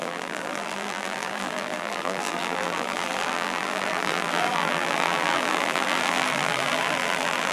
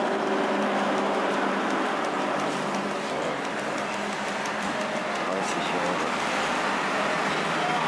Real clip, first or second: second